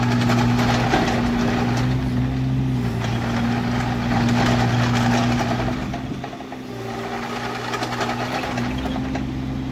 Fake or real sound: real